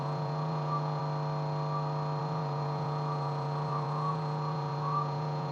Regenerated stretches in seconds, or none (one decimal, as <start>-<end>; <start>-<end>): 0.0-1.0; 2.2-5.5